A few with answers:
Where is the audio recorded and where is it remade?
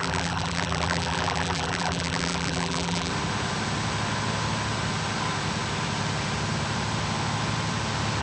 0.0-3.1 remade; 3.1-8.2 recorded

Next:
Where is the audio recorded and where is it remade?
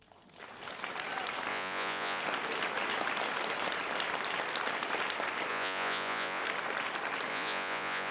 0.0-1.5 recorded; 1.5-2.2 remade; 2.2-5.5 recorded; 5.5-6.4 remade; 6.4-7.3 recorded; 7.3-8.1 remade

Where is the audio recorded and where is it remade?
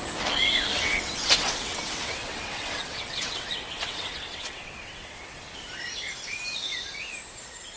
0.0-0.7 recorded; 0.7-5.4 remade; 5.4-7.8 recorded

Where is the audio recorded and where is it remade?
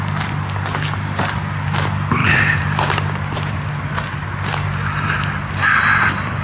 0.0-6.4 recorded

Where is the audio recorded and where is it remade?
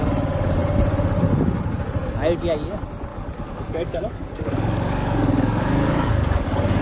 0.0-3.1 recorded; 3.1-6.8 remade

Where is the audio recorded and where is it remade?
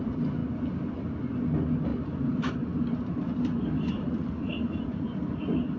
0.0-1.9 recorded; 1.9-5.0 remade; 5.0-5.8 recorded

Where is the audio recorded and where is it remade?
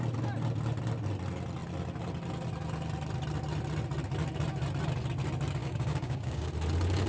0.0-5.6 recorded; 5.6-6.5 remade; 6.5-7.1 recorded